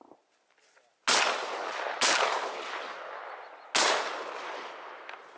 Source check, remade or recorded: recorded